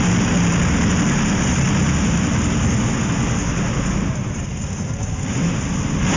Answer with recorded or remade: recorded